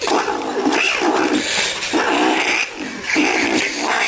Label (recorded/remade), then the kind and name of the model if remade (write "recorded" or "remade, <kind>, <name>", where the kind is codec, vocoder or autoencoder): remade, vocoder, BigVGAN v2